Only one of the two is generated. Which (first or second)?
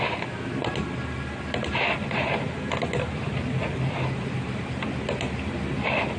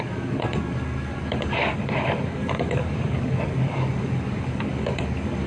second